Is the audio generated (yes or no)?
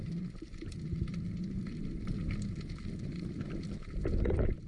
yes